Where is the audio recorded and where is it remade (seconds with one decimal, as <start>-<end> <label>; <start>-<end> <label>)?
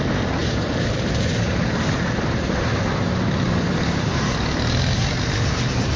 0.0-0.4 recorded; 0.4-1.8 remade; 1.8-6.0 recorded